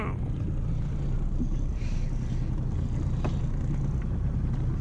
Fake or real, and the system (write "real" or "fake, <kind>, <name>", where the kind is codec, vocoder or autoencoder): real